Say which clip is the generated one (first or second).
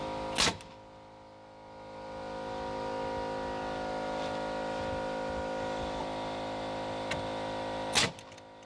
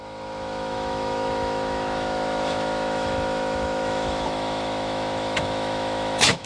second